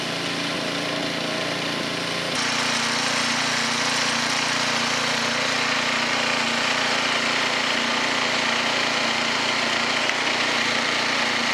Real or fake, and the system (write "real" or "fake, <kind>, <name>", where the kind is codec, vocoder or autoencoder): real